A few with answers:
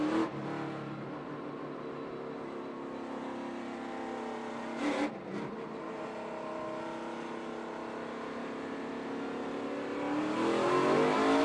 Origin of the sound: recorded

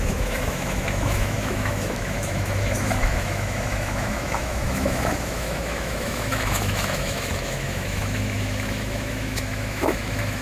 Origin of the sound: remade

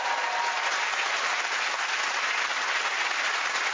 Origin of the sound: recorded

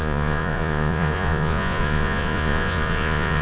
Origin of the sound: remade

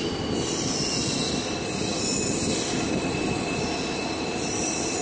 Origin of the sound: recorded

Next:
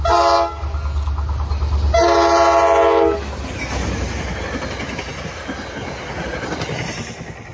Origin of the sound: recorded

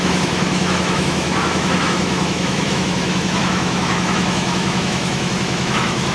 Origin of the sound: remade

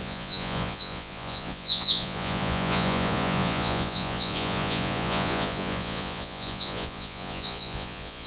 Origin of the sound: remade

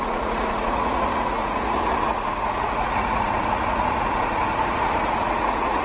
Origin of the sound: remade